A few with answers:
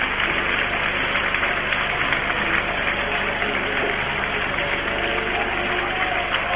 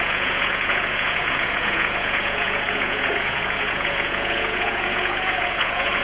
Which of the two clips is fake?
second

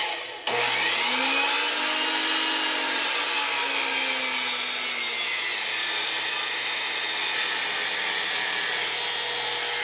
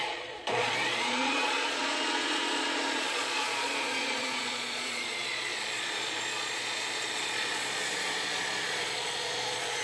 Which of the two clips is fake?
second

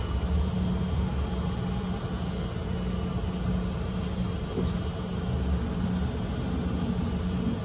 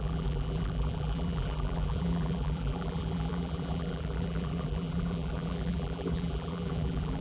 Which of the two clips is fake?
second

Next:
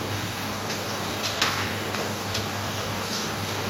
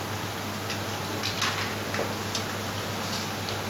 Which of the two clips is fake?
first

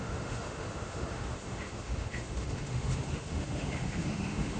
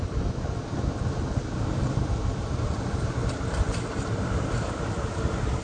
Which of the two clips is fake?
first